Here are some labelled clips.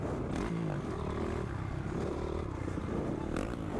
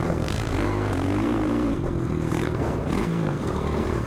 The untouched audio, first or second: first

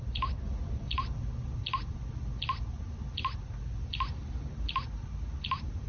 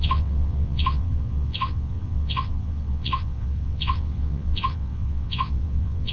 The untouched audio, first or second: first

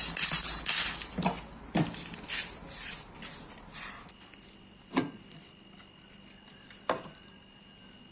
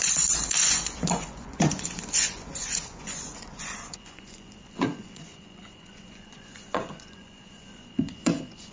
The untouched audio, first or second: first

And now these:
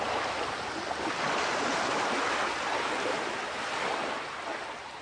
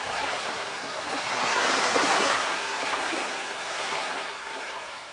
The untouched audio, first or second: first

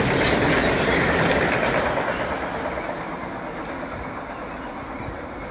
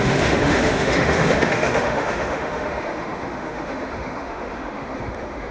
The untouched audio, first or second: first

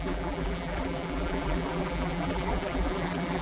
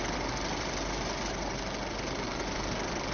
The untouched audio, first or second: second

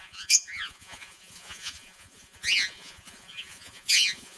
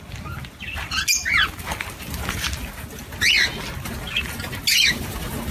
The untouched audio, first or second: second